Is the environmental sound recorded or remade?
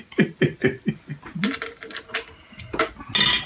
recorded